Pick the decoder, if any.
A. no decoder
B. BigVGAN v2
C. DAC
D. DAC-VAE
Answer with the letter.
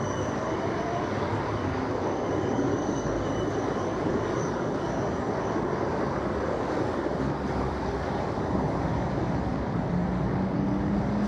C